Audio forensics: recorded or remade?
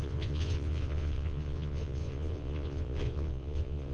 remade